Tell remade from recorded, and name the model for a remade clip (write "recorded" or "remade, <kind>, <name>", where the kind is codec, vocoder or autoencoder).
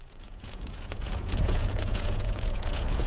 remade, vocoder, Vocos